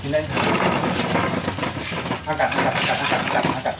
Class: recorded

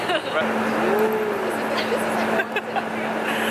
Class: recorded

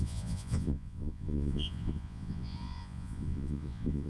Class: remade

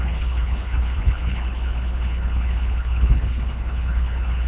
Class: remade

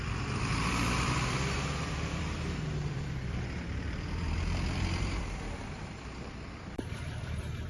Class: remade